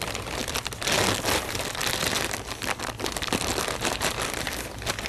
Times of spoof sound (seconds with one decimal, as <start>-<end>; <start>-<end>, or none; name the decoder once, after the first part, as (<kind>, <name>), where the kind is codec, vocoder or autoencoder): none